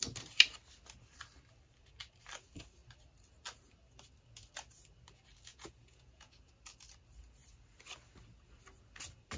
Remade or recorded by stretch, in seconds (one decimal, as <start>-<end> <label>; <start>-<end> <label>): 0.0-5.5 recorded; 5.5-6.3 remade; 6.3-9.4 recorded